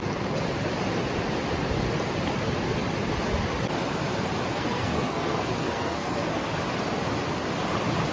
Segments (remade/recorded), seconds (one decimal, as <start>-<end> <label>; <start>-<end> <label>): 0.0-4.5 recorded; 4.5-6.5 remade; 6.5-8.1 recorded